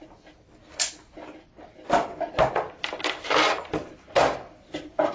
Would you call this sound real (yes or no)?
yes